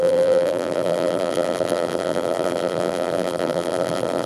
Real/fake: fake